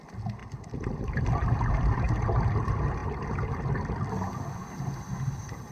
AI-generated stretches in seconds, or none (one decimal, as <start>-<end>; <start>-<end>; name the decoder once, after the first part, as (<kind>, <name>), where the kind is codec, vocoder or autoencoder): 0.4-1.7 (vocoder, BigVGAN v2)